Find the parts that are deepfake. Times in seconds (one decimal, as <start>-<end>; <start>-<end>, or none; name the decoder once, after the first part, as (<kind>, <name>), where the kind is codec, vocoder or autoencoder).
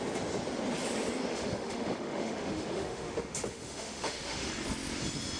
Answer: 1.3-4.5 (autoencoder, DAC-VAE)